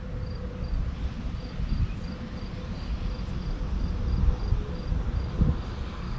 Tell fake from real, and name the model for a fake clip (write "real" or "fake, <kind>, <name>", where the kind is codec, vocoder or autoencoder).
real